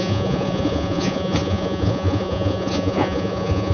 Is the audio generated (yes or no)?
yes